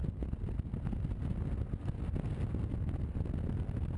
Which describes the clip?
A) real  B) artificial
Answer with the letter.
A